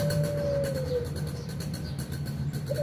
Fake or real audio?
real